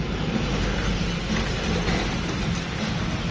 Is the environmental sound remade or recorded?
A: recorded